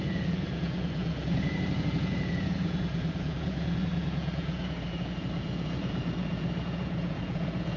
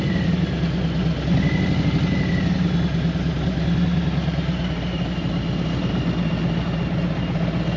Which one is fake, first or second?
first